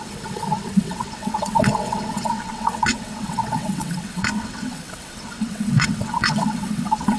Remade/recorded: remade